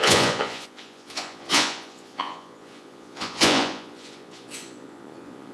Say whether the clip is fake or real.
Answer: fake